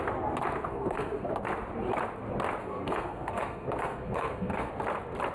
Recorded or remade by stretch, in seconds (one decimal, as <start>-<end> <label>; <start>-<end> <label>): 0.0-0.7 recorded; 0.7-1.3 remade; 1.3-2.6 recorded; 2.6-4.7 remade; 4.7-5.3 recorded